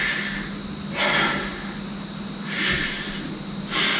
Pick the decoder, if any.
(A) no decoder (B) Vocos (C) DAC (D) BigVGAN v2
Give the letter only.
A